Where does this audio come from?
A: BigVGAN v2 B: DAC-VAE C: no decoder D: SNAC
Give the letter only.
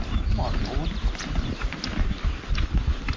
C